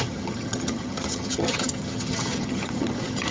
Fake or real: fake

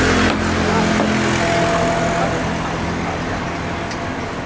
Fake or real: real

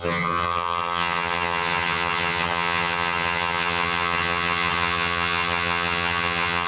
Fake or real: fake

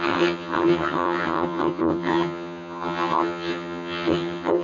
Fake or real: fake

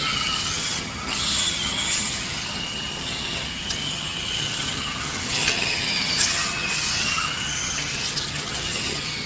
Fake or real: fake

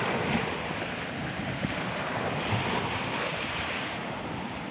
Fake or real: real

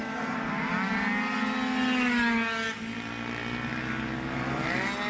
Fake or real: real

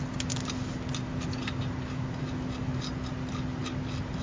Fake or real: real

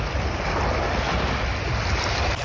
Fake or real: real